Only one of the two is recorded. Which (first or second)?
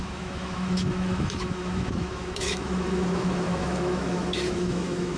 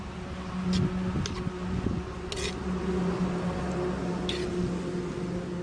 second